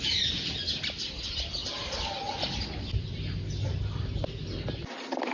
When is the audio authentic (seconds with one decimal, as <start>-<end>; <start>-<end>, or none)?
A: 0.0-5.3